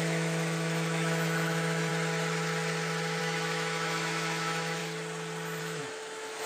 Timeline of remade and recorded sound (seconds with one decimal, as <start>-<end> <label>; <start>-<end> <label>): 0.0-1.9 remade; 1.9-3.2 recorded; 3.2-4.8 remade; 4.8-5.6 recorded; 5.6-6.5 remade